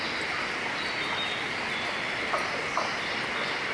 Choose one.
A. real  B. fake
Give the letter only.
A